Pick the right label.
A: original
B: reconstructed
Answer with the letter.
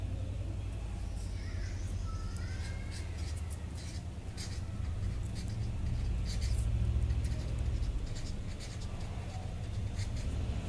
A